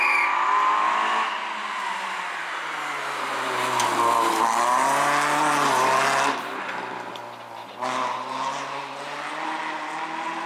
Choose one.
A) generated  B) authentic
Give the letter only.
B